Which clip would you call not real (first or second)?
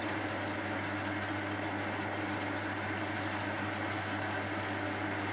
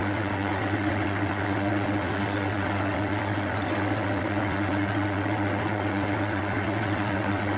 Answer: second